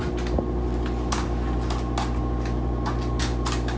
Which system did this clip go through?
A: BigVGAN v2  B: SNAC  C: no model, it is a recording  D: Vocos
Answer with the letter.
C